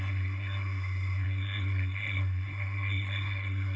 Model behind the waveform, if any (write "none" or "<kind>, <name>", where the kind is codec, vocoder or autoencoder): codec, SNAC